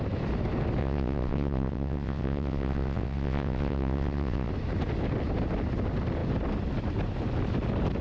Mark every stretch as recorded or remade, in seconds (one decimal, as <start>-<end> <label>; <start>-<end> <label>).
0.0-0.8 recorded; 0.8-4.5 remade; 4.5-8.0 recorded